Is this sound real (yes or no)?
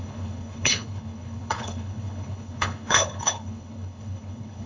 no